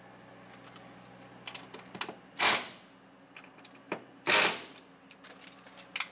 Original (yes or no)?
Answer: yes